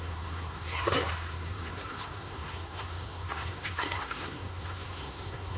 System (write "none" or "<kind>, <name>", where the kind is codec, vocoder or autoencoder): codec, SNAC